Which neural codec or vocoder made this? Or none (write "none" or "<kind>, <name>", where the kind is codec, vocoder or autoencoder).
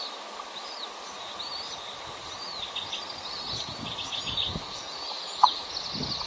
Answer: none